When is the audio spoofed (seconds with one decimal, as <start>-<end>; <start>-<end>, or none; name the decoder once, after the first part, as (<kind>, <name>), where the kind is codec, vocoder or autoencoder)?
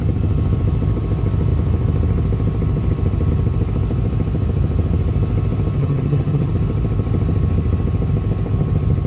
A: 5.8-6.5 (vocoder, HiFi-GAN)